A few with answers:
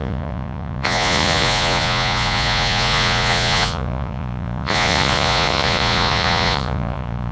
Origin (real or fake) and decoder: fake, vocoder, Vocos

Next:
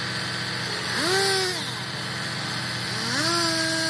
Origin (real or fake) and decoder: real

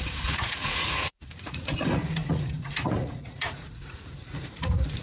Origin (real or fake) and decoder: fake, vocoder, Vocos